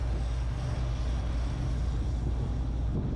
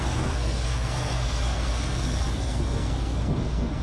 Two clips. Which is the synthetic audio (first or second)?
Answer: second